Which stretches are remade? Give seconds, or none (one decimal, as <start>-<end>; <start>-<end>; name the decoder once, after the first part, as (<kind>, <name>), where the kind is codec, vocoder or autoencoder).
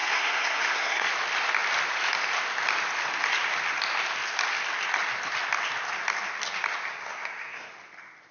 0.0-1.1 (codec, SNAC); 6.9-7.7